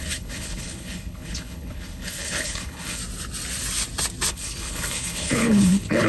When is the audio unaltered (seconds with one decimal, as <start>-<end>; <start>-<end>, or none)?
3.0-4.3